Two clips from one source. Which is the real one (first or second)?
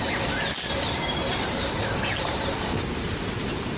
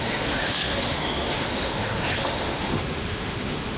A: first